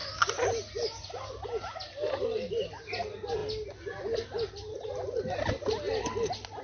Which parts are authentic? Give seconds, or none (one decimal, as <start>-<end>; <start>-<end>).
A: 0.0-6.6